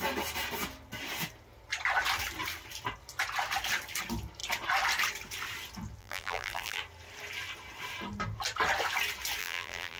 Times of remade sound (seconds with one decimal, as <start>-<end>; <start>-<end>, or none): 6.0-6.8; 9.4-10.0